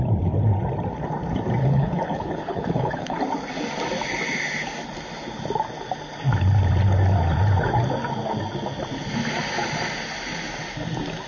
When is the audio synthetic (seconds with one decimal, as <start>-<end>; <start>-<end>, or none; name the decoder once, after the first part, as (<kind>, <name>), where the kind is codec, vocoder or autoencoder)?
1.6-3.2 (codec, HILCodec)